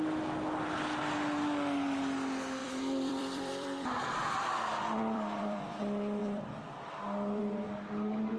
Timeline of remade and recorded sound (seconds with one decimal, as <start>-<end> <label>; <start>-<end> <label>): 0.0-2.6 recorded; 2.6-5.8 remade; 5.8-6.2 recorded; 6.2-7.4 remade; 7.4-8.4 recorded